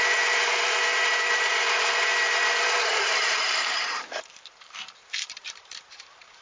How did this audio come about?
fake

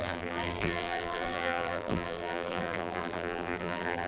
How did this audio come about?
fake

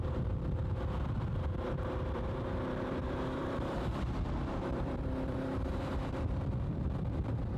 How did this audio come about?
fake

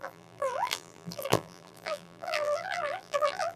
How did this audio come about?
fake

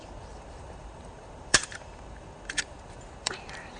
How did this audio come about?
fake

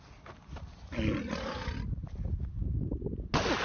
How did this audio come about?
real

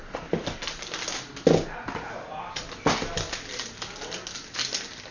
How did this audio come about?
real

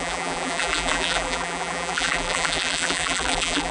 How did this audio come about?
fake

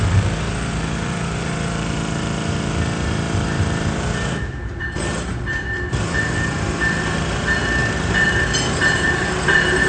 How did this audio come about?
fake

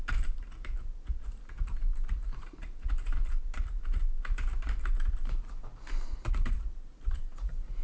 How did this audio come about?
fake